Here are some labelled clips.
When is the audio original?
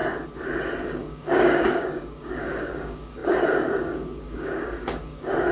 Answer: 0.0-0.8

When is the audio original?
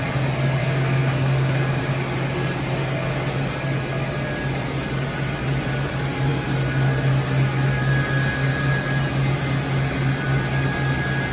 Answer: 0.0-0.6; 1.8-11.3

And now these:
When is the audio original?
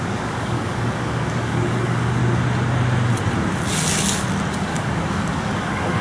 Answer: 2.2-4.5